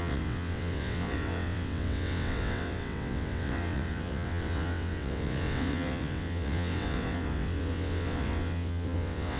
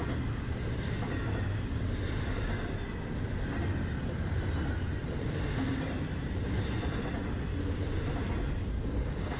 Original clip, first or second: second